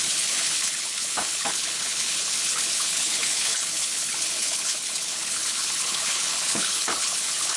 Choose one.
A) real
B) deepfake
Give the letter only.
B